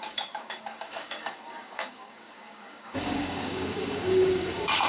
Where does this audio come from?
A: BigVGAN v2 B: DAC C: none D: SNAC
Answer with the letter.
B